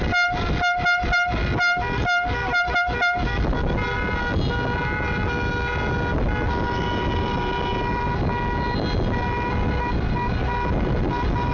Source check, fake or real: real